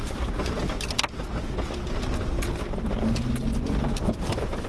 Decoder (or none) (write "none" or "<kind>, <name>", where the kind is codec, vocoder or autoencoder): none